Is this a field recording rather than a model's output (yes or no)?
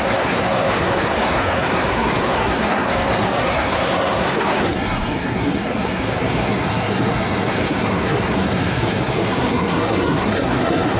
no